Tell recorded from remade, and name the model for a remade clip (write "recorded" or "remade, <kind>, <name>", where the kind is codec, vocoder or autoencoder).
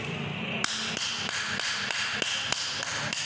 recorded